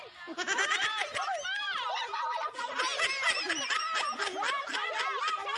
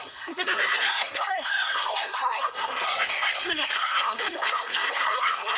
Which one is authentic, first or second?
first